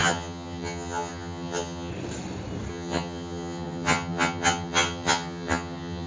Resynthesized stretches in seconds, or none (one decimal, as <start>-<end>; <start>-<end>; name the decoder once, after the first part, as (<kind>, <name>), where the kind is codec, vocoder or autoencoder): 0.0-1.9 (vocoder, HiFi-GAN); 2.7-6.1